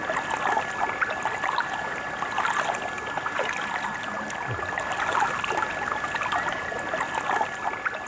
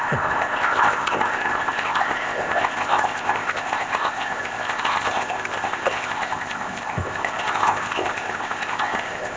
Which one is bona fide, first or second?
first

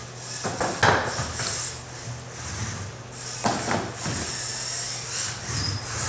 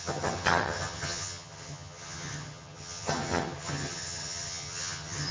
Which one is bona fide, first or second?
first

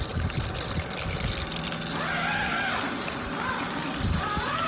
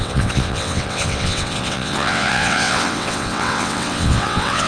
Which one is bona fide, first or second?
first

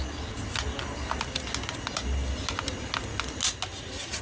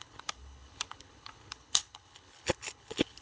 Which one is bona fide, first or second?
first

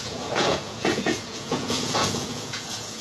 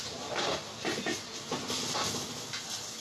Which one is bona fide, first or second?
second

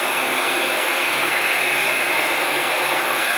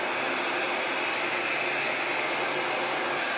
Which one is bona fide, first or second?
second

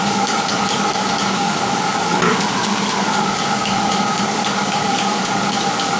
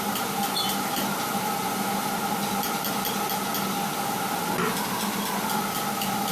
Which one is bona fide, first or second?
second